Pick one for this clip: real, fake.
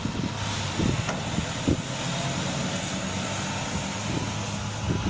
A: real